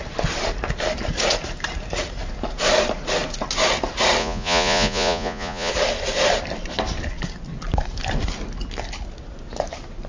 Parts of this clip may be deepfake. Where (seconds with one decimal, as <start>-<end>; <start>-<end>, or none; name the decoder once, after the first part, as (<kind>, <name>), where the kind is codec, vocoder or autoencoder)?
4.2-5.7 (vocoder, Vocos)